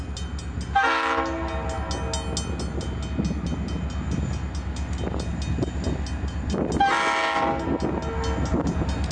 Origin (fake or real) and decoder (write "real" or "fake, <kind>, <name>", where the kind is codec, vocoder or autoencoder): real